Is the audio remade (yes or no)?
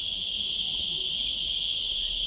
no